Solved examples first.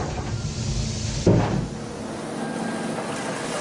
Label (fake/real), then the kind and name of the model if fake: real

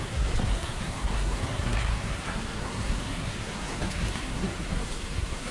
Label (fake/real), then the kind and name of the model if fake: fake, codec, SNAC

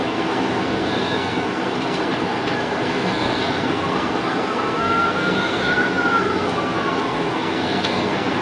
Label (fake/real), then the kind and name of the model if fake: fake, codec, SNAC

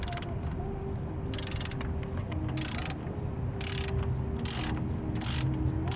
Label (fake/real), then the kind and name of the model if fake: real